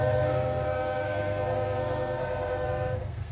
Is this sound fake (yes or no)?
yes